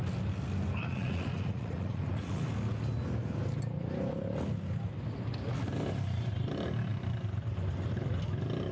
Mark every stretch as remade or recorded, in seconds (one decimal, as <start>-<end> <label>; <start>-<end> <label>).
0.0-0.8 recorded; 0.8-2.5 remade; 2.5-8.7 recorded

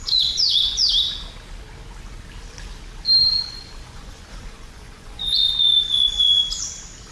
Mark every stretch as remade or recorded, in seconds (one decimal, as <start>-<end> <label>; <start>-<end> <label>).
0.0-0.9 remade; 0.9-3.4 recorded; 3.4-6.4 remade; 6.4-7.1 recorded